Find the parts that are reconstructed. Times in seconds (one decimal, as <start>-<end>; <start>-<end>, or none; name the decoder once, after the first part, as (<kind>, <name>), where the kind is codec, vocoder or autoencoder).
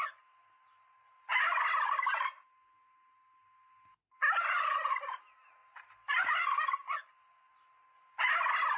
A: none